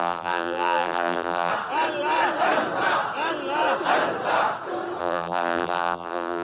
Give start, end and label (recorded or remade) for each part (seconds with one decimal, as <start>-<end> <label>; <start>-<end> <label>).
0.0-1.5 remade; 1.5-5.0 recorded; 5.0-6.4 remade

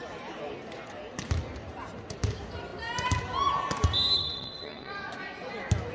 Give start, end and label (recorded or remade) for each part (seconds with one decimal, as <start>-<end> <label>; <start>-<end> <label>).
0.0-4.2 recorded; 4.2-4.9 remade; 4.9-5.9 recorded